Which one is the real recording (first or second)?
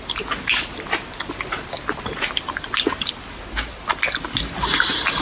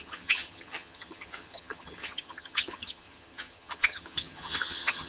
first